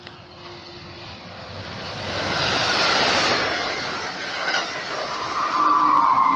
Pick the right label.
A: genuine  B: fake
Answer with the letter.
A